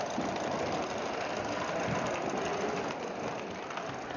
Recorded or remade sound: recorded